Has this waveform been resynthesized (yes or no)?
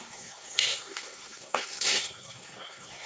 yes